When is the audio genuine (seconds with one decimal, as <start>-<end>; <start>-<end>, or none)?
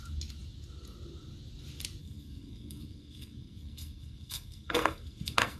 0.0-2.0